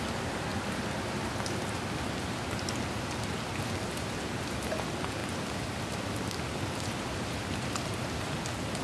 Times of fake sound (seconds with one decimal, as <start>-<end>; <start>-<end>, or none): none